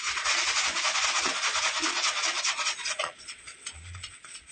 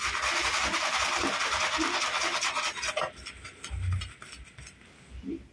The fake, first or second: first